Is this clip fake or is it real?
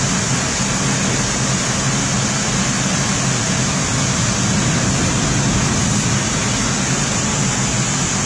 real